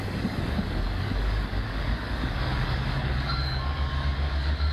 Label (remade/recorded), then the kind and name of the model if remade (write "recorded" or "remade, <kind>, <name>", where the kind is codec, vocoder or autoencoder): remade, codec, DAC